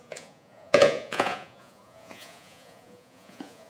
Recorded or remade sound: remade